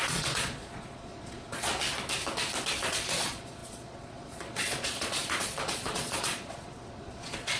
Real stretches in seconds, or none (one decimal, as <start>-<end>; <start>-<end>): 1.7-2.8

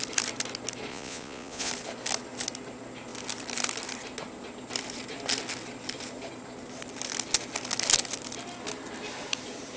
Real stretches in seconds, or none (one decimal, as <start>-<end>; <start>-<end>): 0.0-0.9; 1.7-9.8

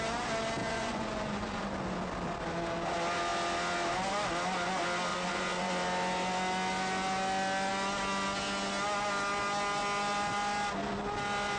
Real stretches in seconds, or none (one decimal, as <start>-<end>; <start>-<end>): 0.0-0.6; 1.6-5.1; 5.7-11.6

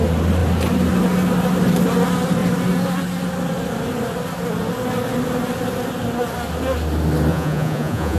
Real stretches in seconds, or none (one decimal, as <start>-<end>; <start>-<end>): 0.0-7.3

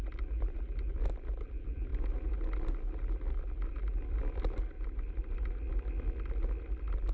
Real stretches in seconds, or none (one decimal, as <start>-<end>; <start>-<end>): 0.0-7.1

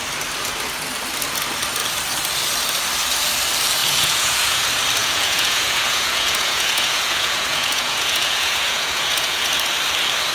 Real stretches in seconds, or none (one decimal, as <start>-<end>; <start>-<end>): 0.0-3.8; 4.6-5.0; 9.5-10.3